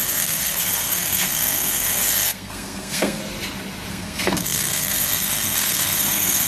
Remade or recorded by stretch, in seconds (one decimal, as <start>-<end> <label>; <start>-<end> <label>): 0.0-3.2 remade; 3.2-3.9 recorded; 3.9-6.5 remade